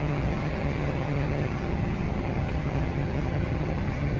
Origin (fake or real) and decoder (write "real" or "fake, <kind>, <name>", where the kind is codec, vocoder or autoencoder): fake, vocoder, HiFi-GAN